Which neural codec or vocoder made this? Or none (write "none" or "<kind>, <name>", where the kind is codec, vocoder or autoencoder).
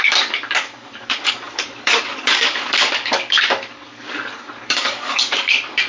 codec, DAC